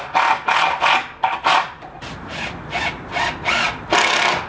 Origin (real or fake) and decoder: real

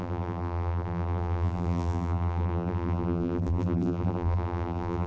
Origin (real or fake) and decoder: fake, vocoder, BigVGAN v2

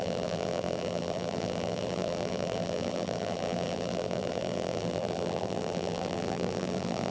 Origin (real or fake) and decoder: fake, vocoder, BigVGAN v2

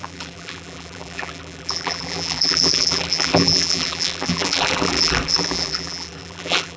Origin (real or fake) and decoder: fake, vocoder, BigVGAN v2